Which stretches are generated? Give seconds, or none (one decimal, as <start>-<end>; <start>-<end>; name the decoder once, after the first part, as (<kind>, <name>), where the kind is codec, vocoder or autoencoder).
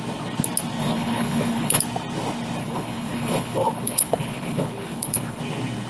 0.8-1.8 (codec, HILCodec); 2.6-5.4